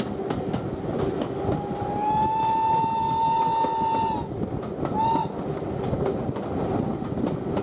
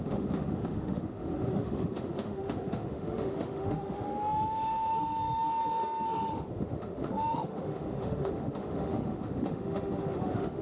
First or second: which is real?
first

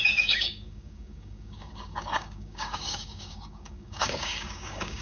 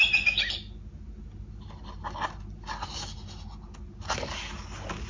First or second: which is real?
second